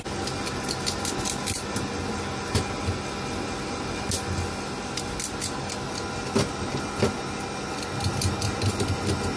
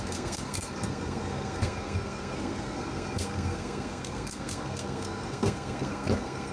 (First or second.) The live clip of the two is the first